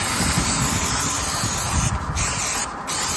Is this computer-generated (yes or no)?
no